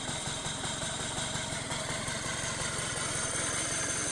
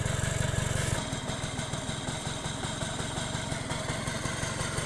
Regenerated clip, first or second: first